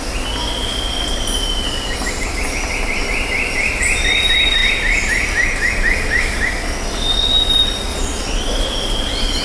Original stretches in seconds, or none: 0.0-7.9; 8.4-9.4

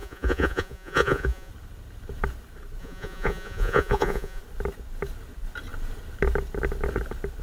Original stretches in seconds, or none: 1.5-2.8; 4.4-7.4

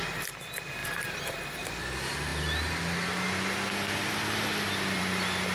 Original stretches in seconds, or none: 0.0-5.5

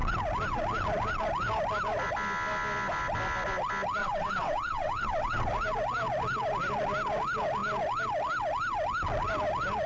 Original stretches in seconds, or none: 0.0-4.0; 5.5-9.9

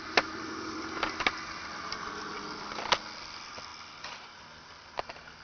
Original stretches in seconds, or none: 0.0-5.4

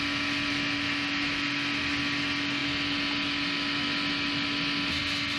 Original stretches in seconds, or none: 0.0-5.4

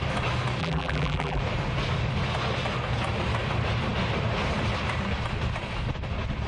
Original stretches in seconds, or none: 0.0-0.6; 1.4-6.5

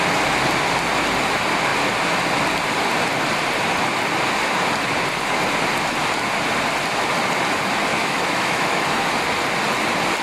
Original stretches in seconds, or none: 0.0-7.9; 9.1-10.2